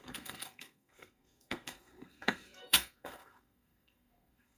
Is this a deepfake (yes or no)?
yes